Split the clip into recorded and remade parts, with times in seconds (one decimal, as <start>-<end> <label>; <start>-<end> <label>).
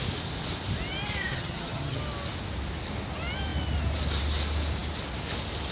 0.0-1.3 recorded; 1.3-2.0 remade; 2.0-5.7 recorded